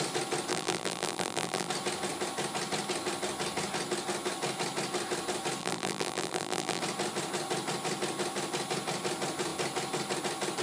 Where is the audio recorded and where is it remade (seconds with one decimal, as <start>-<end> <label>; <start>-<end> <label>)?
0.0-0.5 recorded; 0.5-1.7 remade; 1.7-5.6 recorded; 5.6-6.8 remade; 6.8-10.6 recorded